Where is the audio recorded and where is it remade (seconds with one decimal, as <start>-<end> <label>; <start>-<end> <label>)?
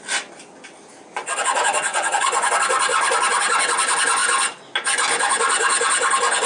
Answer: 0.0-1.9 recorded; 1.9-2.5 remade; 2.5-6.5 recorded